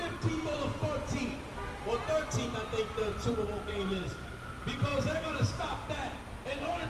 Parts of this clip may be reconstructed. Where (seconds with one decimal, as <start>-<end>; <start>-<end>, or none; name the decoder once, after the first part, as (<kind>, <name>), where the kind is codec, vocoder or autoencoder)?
4.9-5.5 (autoencoder, DAC-VAE)